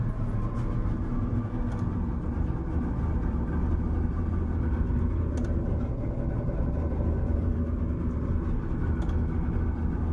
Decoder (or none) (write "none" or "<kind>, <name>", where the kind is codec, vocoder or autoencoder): none